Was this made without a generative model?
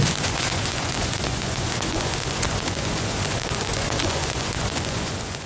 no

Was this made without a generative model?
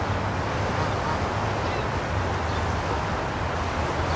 yes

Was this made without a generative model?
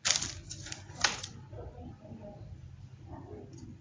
yes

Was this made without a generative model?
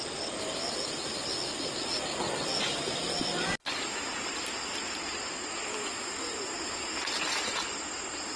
yes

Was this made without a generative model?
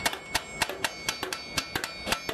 yes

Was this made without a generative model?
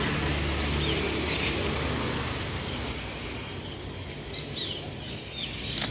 yes